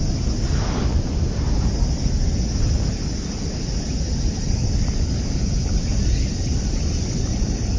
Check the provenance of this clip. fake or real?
real